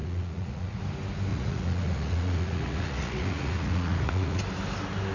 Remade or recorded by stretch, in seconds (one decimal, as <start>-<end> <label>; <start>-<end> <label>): 0.0-0.8 remade; 0.8-1.3 recorded; 1.3-4.4 remade; 4.4-5.1 recorded